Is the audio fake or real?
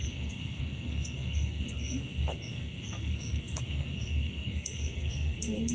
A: fake